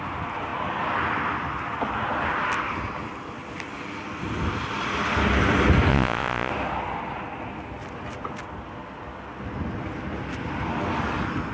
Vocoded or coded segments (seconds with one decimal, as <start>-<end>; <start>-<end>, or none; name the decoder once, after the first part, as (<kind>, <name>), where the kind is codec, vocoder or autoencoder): 5.9-6.5 (vocoder, Vocos)